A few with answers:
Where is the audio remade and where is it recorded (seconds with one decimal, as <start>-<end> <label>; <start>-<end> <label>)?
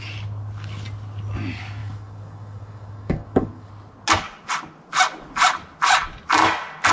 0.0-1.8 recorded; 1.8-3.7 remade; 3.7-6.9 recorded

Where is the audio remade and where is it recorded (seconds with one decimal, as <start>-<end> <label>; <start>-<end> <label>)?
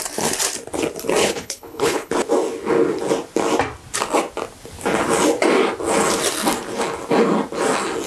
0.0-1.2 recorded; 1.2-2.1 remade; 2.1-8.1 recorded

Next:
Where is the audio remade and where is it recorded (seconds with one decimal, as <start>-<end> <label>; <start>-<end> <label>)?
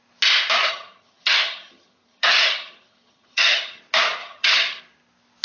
0.0-0.6 recorded; 0.6-3.8 remade; 3.8-4.2 recorded; 4.2-4.8 remade; 4.8-5.4 recorded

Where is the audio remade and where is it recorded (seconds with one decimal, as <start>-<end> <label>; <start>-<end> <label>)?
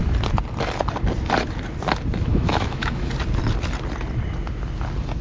0.0-2.3 recorded; 2.3-3.1 remade; 3.1-5.2 recorded